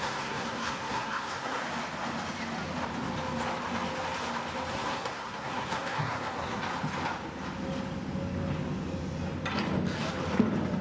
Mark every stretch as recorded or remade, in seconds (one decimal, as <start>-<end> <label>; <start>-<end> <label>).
0.0-1.6 remade; 1.6-4.7 recorded; 4.7-6.6 remade; 6.6-10.8 recorded